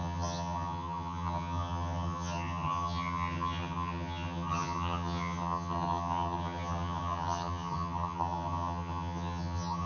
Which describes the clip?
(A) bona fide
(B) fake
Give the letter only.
B